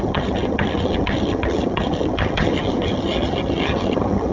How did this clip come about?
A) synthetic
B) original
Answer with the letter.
A